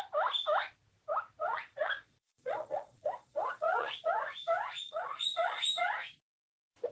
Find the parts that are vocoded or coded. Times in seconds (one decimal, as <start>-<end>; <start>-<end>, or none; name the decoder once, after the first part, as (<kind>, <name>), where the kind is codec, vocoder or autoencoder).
1.4-4.1 (vocoder, Vocos); 4.8-5.8